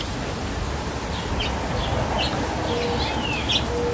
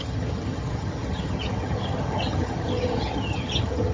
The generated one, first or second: second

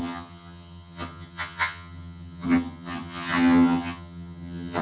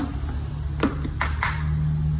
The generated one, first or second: first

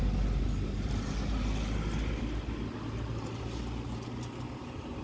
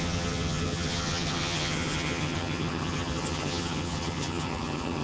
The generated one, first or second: second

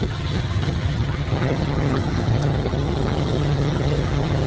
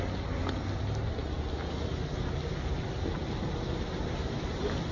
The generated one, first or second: first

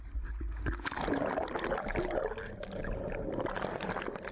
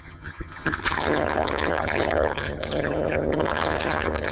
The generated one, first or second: second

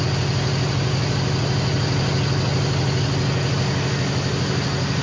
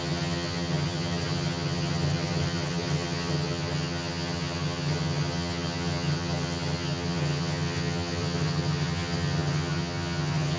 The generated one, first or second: second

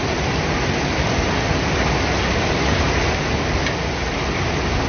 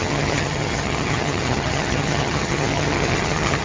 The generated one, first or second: second